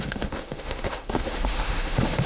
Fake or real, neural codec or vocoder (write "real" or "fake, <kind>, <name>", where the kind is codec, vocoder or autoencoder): fake, autoencoder, DAC-VAE